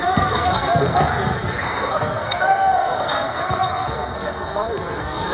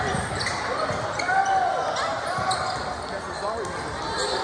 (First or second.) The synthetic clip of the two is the first